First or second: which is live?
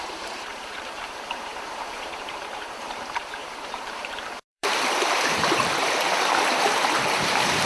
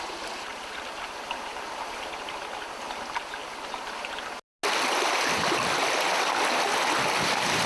second